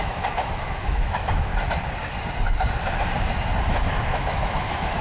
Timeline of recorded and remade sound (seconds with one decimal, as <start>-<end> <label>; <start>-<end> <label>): 0.0-1.5 remade; 1.5-3.9 recorded; 3.9-5.0 remade